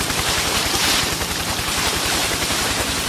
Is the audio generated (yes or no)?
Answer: yes